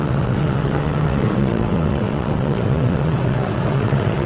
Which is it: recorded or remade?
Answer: remade